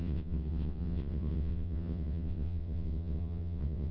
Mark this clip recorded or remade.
remade